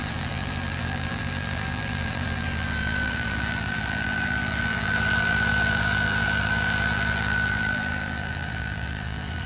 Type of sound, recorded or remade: remade